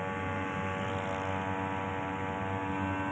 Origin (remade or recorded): recorded